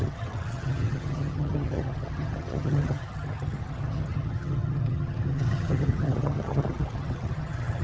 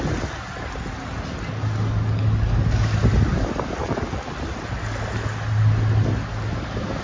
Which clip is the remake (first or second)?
first